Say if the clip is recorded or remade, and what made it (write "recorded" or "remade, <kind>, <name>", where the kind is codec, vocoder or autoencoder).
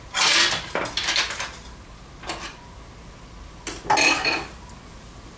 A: recorded